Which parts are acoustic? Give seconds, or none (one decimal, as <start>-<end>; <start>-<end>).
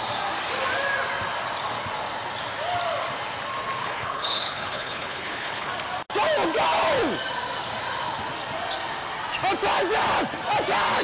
0.0-3.8; 5.7-11.0